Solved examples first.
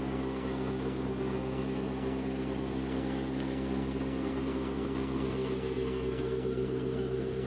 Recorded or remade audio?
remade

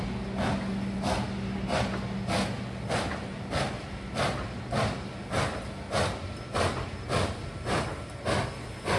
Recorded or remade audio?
recorded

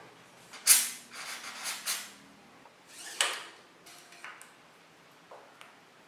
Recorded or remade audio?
recorded